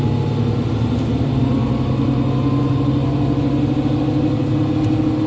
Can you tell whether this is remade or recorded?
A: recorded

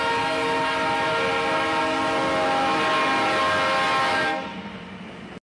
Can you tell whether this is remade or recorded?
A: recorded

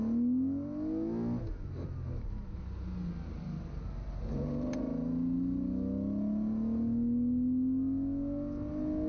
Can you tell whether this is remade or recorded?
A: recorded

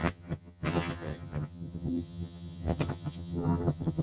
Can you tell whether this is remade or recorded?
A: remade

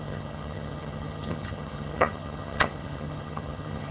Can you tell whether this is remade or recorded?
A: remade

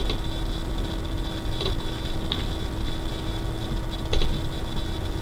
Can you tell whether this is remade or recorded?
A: recorded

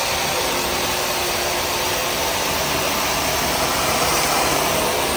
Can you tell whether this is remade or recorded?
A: remade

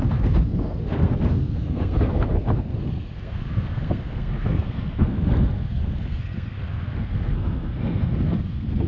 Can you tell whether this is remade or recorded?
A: remade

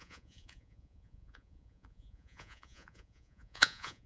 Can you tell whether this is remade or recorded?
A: remade